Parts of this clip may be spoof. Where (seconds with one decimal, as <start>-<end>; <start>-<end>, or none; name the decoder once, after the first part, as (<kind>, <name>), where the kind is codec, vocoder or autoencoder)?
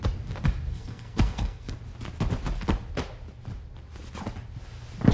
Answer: 0.7-1.7 (codec, SNAC)